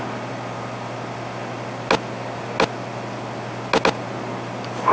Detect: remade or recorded recorded